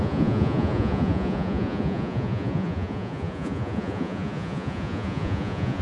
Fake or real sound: fake